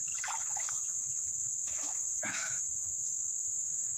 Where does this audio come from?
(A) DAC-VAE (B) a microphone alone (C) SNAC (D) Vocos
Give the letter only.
A